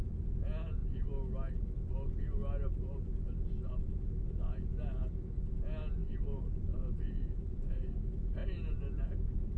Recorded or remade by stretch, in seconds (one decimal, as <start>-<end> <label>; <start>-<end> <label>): 0.0-6.0 recorded; 6.0-8.0 remade; 8.0-9.6 recorded